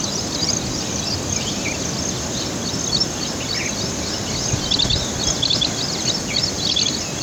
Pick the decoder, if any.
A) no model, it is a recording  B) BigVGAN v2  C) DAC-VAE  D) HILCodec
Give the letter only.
A